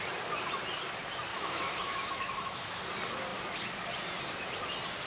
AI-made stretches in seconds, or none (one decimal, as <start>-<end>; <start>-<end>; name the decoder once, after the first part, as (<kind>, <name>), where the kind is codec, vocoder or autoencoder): 1.3-2.8 (autoencoder, DAC-VAE)